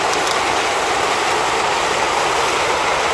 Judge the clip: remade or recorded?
recorded